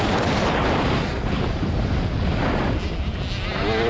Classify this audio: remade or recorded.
recorded